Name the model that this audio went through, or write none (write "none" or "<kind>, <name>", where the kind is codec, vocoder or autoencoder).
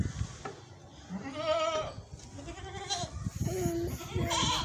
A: none